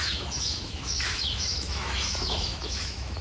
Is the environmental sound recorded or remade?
remade